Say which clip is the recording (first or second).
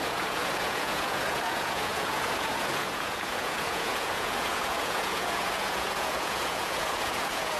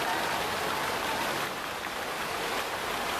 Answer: second